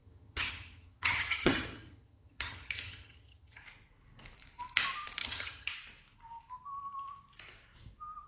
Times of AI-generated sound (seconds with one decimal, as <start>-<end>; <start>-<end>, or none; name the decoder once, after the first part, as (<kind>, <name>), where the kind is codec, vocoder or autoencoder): 0.0-3.6 (vocoder, HiFi-GAN); 5.2-5.7